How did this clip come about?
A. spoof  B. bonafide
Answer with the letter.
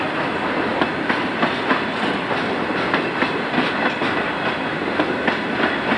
B